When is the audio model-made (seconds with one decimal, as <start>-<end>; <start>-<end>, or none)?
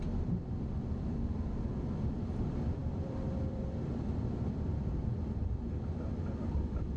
0.0-7.0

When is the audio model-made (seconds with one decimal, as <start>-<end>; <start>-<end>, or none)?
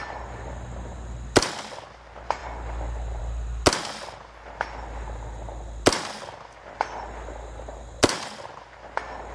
none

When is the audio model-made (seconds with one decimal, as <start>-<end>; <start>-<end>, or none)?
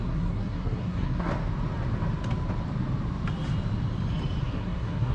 0.0-1.3; 4.4-5.1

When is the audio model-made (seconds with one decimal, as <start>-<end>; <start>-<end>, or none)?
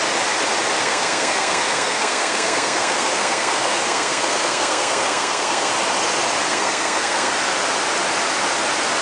0.8-5.7; 6.5-7.3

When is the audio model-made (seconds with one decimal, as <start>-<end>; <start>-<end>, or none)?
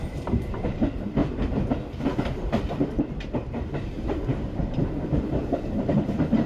0.0-1.2; 2.7-6.5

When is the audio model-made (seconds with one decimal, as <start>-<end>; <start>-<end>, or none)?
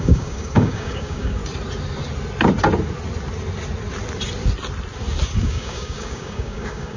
0.0-1.4; 5.4-7.0